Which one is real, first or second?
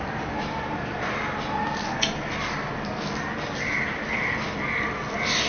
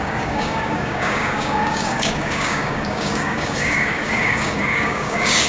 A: first